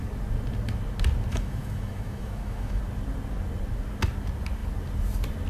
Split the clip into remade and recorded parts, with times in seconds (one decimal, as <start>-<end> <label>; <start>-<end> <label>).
0.0-1.3 recorded; 1.3-2.8 remade; 2.8-5.5 recorded